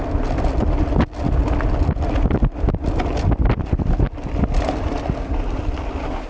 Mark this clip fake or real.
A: real